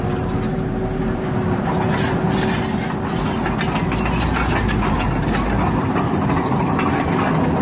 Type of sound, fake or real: real